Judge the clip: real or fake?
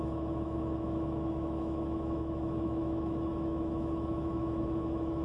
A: fake